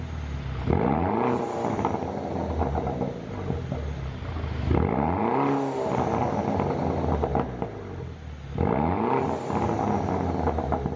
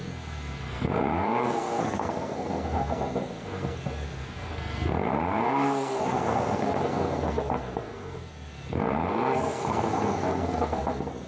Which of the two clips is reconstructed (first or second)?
second